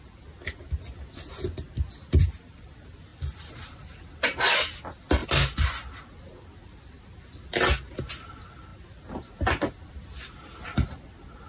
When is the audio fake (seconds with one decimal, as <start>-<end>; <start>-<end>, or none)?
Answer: none